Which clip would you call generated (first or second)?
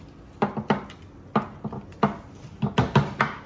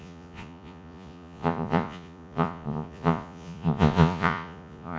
second